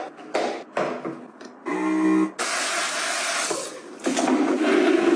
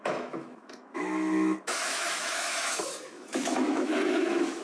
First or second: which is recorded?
first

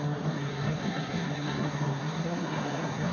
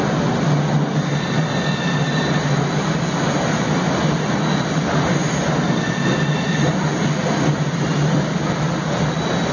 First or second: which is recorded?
second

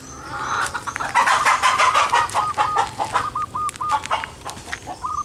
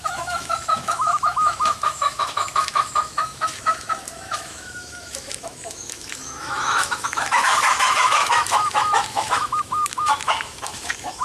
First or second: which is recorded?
first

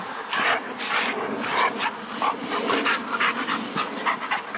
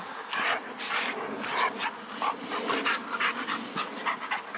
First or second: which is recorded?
second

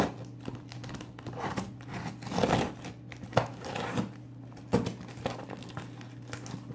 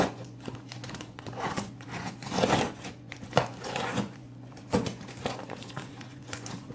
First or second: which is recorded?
first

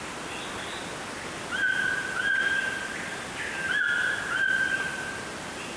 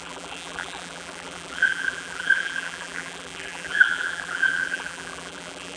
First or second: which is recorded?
first